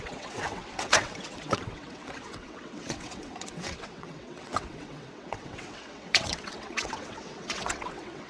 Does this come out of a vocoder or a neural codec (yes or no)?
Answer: yes